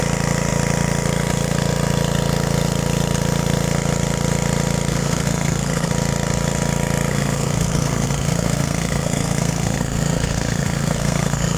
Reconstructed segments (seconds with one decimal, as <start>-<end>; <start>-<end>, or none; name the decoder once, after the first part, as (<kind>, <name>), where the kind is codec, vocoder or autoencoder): 4.9-5.9 (codec, SNAC); 7.1-11.6